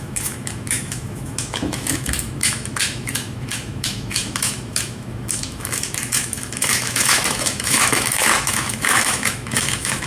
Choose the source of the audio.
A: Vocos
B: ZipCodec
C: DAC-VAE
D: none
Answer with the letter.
C